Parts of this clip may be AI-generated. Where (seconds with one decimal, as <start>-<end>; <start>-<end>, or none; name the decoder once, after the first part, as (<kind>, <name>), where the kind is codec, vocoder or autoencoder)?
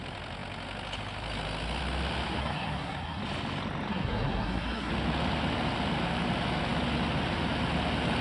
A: 2.4-3.2 (codec, SNAC); 3.9-4.9